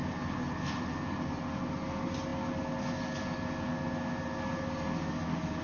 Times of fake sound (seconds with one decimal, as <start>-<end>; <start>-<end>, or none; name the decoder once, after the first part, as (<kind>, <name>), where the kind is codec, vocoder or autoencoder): none